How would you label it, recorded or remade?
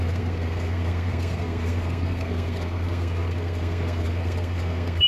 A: remade